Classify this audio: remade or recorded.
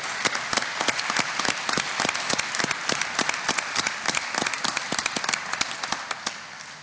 recorded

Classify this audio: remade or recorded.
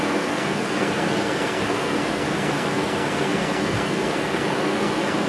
remade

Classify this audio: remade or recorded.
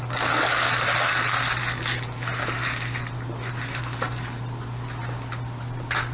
recorded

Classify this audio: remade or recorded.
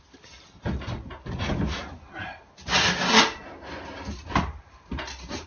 recorded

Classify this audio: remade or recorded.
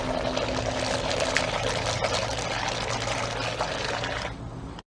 recorded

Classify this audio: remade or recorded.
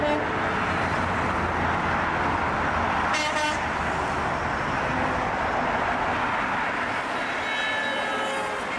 recorded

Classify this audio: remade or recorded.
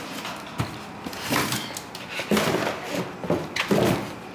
recorded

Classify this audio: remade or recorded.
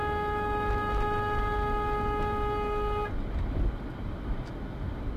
recorded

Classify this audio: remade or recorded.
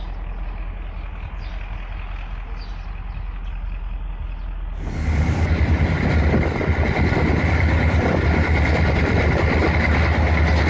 recorded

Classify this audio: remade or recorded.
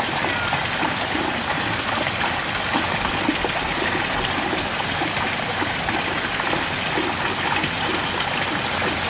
recorded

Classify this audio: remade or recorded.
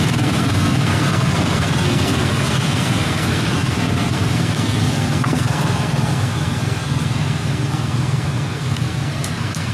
remade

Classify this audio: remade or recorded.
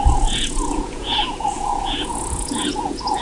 remade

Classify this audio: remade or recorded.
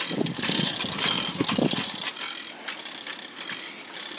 recorded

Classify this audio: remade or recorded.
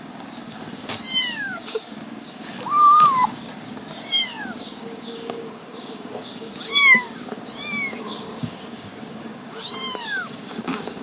remade